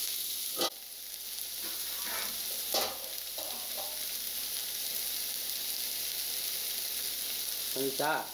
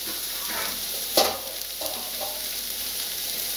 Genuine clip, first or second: first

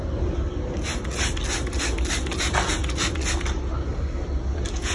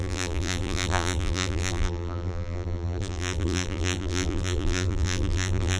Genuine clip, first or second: first